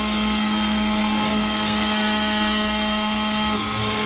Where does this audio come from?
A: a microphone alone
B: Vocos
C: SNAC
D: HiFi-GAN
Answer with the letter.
C